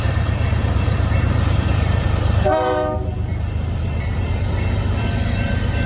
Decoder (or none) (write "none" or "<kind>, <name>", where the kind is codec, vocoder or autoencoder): vocoder, BigVGAN v2